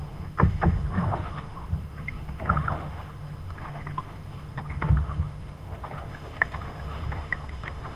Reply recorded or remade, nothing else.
remade